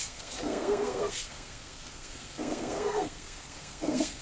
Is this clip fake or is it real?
fake